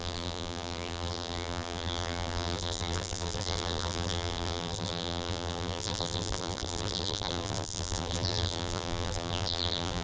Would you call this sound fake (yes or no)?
yes